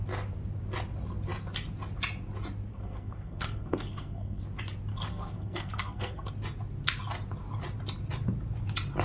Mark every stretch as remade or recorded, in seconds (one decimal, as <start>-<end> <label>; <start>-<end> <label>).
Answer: 0.0-2.7 recorded; 2.7-4.4 remade; 4.4-4.9 recorded; 4.9-6.3 remade; 6.3-9.0 recorded